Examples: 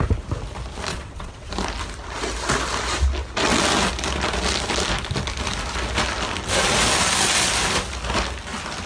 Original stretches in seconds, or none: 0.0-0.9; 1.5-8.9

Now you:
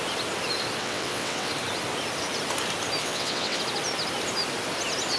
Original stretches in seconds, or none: 0.0-0.8; 1.5-3.0; 3.6-5.2

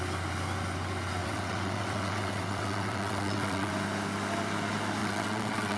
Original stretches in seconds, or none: 0.0-1.2; 3.7-5.0